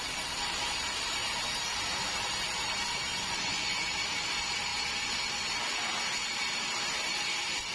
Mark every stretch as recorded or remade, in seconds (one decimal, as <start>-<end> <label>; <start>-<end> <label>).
0.0-3.1 recorded; 3.1-3.9 remade; 3.9-7.7 recorded